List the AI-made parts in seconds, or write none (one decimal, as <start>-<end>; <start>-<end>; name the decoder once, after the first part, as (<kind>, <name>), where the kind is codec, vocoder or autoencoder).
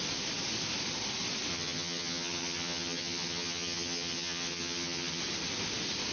1.5-5.2 (vocoder, HiFi-GAN)